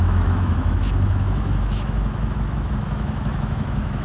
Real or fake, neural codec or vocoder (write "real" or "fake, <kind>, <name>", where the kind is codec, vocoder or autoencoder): fake, autoencoder, DAC-VAE